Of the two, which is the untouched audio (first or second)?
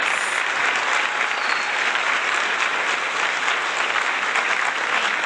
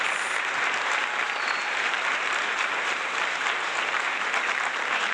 first